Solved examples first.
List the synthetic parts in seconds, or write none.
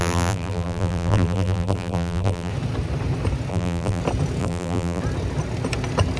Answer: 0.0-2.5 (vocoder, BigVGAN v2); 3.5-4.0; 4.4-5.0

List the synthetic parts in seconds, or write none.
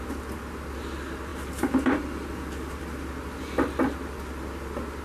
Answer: none